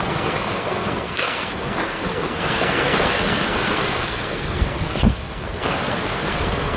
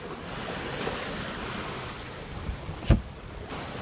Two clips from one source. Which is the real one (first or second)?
second